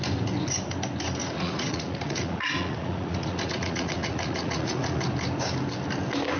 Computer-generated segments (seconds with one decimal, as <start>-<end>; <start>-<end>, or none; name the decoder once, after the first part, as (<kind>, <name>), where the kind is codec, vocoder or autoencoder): 1.2-5.0 (vocoder, Vocos)